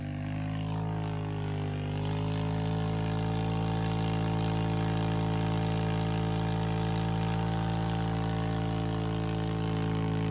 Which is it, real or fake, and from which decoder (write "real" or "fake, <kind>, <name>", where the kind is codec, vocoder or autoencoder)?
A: real